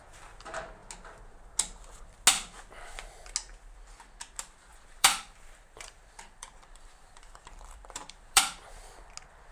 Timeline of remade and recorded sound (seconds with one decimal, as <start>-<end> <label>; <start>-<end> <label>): 0.0-4.7 recorded; 4.7-8.4 remade; 8.4-9.5 recorded